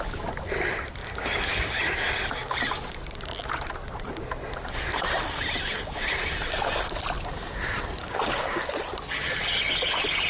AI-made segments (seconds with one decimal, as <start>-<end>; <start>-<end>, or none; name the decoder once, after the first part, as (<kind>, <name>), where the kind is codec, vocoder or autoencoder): 1.0-1.8 (codec, DAC); 8.0-8.6